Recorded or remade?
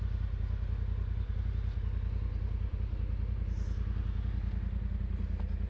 recorded